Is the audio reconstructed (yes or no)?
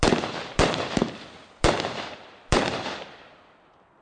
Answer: yes